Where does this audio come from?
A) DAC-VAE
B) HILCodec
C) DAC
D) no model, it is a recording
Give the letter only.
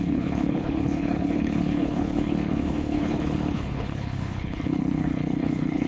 B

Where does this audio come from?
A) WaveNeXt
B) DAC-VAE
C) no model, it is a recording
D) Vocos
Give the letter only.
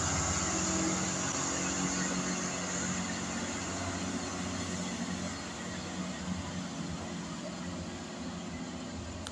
C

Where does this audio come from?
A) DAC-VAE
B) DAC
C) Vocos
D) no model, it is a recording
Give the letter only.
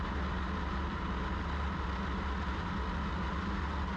D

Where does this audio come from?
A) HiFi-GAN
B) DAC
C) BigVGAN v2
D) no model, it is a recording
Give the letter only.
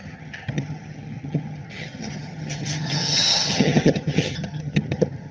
A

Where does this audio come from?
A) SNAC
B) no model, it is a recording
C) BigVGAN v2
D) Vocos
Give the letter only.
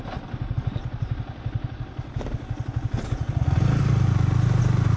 B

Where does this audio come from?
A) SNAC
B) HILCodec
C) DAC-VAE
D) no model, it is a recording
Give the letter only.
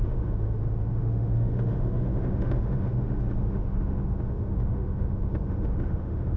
C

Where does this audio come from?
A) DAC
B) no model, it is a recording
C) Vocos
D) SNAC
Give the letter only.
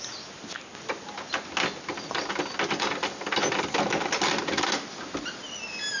B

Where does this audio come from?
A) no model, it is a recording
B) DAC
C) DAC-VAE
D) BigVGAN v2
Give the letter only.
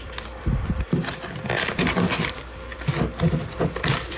D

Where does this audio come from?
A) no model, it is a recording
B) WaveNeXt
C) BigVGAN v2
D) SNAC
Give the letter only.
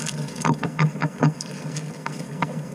D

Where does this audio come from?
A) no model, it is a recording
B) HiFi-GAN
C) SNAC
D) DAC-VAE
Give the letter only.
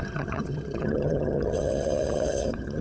B